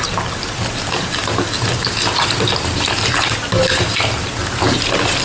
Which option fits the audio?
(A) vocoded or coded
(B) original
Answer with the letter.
B